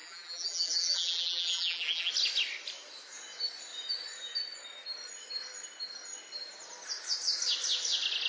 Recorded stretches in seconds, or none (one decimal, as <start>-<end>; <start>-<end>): 2.1-8.3